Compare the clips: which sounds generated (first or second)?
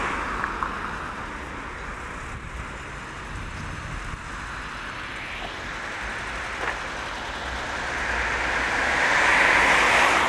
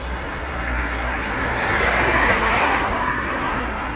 second